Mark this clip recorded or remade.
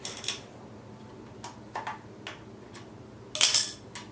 recorded